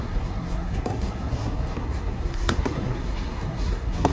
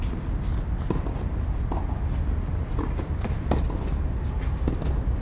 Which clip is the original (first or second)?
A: second